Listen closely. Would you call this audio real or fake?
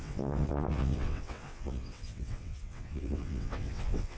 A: fake